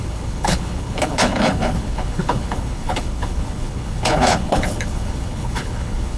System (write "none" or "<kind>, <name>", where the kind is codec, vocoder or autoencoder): codec, HILCodec